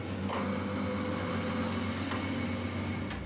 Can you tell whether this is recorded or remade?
recorded